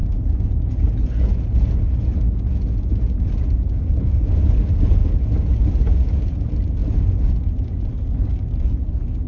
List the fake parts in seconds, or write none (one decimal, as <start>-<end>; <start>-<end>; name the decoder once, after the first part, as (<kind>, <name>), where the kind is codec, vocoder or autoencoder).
0.0-4.4 (vocoder, Vocos); 5.0-5.6; 6.8-7.9